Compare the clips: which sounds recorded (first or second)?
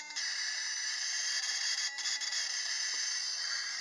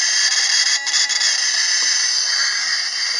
second